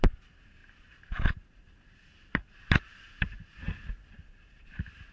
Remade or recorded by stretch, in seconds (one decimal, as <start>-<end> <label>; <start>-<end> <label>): 0.0-3.5 remade; 3.5-4.1 recorded; 4.1-5.1 remade